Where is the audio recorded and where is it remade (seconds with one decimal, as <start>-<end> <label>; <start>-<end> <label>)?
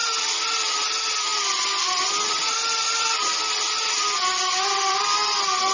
0.0-5.7 recorded